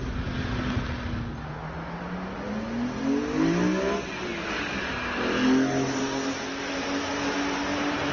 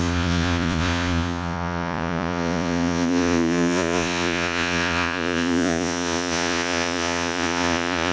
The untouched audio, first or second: first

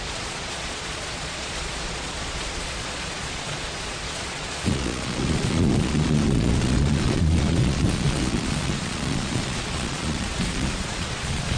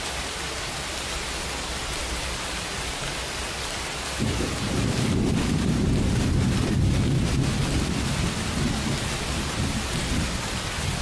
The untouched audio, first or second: second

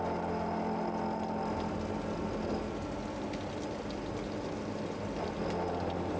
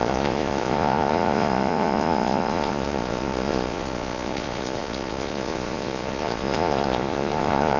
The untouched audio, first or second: first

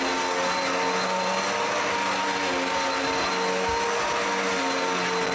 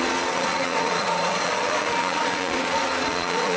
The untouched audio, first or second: first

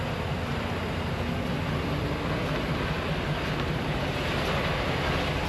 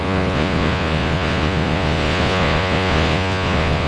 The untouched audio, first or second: first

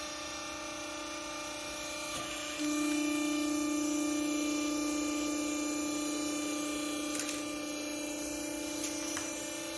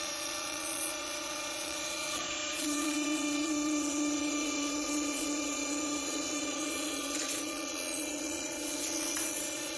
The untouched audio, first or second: first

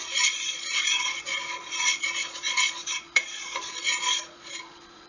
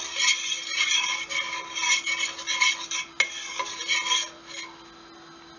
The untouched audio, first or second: second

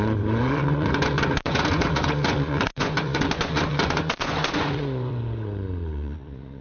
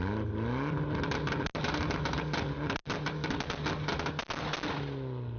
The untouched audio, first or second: second